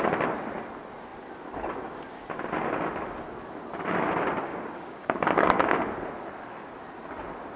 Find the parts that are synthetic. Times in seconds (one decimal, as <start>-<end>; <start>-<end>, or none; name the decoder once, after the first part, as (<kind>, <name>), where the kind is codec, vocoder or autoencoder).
4.5-5.7 (codec, DAC)